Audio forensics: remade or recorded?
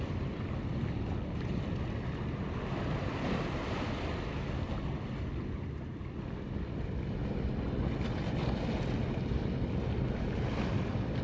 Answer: recorded